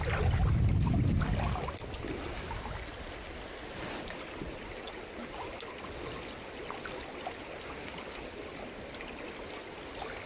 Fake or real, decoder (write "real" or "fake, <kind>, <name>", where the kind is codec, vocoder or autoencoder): real